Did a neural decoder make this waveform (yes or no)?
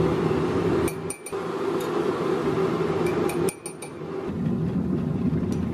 no